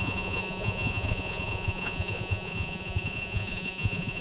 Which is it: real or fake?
fake